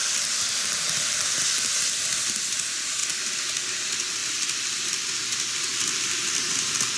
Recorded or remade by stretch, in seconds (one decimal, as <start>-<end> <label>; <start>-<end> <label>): 0.0-4.2 recorded; 4.2-4.9 remade; 4.9-5.7 recorded; 5.7-6.4 remade; 6.4-7.0 recorded